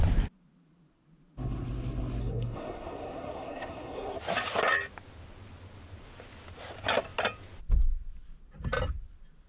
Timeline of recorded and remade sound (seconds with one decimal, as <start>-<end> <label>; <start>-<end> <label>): 0.0-2.2 recorded; 2.2-4.2 remade; 4.2-9.5 recorded